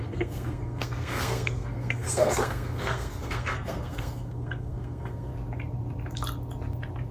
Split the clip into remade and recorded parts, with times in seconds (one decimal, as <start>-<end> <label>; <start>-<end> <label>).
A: 0.0-5.3 remade; 5.3-7.1 recorded